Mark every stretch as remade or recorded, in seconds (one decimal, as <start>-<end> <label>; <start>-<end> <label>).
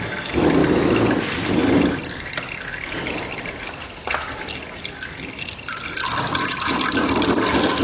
0.0-7.8 recorded